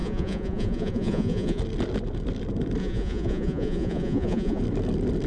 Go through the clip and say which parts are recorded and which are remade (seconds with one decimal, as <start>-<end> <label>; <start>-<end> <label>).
0.0-1.6 remade; 1.6-2.8 recorded; 2.8-4.6 remade; 4.6-5.3 recorded